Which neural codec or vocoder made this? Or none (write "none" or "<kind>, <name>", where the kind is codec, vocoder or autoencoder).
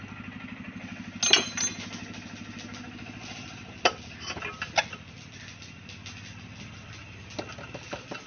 none